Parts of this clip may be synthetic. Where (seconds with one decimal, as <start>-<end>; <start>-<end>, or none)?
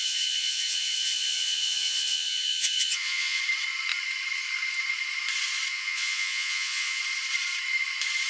0.0-3.4; 5.7-7.0